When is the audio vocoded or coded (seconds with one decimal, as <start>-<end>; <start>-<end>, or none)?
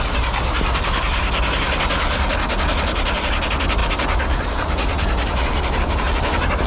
none